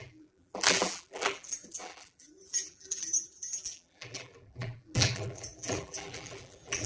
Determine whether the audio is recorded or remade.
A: remade